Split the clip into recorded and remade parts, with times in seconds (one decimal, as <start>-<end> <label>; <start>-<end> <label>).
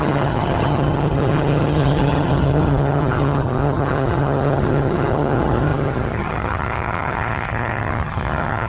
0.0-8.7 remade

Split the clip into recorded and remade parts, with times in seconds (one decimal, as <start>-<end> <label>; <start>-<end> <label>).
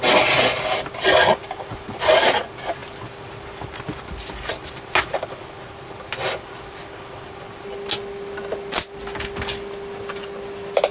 0.0-10.9 recorded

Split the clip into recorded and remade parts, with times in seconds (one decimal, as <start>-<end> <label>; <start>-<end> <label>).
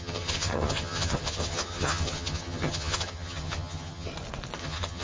0.0-4.1 remade; 4.1-4.6 recorded; 4.6-5.0 remade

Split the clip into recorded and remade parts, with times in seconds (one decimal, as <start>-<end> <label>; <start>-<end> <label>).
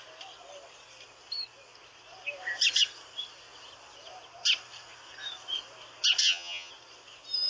0.0-6.2 recorded; 6.2-6.7 remade; 6.7-7.5 recorded